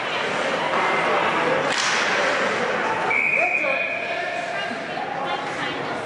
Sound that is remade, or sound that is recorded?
recorded